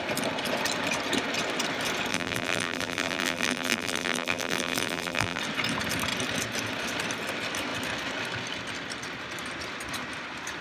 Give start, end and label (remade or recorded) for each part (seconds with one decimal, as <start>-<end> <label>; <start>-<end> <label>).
0.0-2.1 recorded; 2.1-5.4 remade; 5.4-10.6 recorded